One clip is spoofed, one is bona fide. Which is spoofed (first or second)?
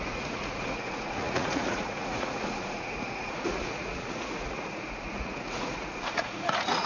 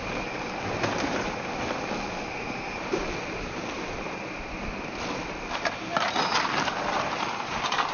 first